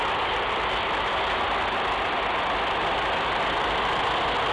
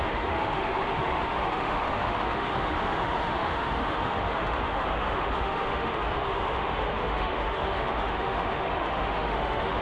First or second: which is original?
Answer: first